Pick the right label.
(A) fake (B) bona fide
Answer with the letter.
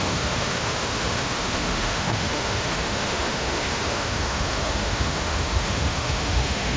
A